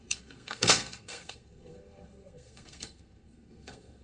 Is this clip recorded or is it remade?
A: remade